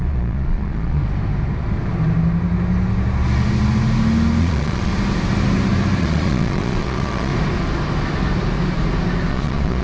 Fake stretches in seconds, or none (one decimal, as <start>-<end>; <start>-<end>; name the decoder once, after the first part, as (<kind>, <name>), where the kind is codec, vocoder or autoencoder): 0.0-1.0 (vocoder, Vocos); 4.4-4.9; 6.0-7.3; 9.3-9.8